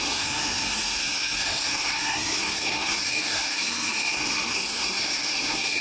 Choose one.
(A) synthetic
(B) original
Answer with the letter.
A